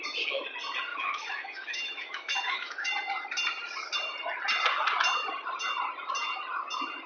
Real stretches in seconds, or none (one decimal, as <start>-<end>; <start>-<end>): 0.0-0.9; 2.9-7.1